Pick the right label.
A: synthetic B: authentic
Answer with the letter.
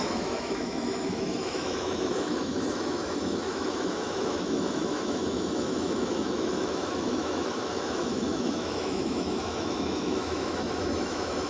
A